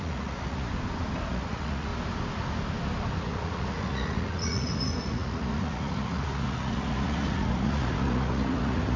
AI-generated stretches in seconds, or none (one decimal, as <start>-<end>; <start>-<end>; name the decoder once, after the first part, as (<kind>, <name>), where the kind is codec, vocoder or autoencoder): 0.0-0.7 (vocoder, Vocos); 1.3-1.9; 3.2-9.0